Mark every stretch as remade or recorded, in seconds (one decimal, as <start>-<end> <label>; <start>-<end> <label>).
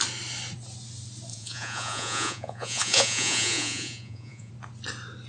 0.0-1.3 recorded; 1.3-4.5 remade; 4.5-5.3 recorded